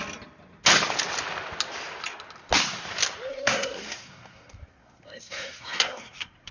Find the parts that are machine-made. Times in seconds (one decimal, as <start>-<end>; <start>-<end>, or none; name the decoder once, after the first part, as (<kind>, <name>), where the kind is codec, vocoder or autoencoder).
3.3-6.5 (codec, SNAC)